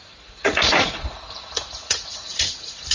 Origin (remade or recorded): remade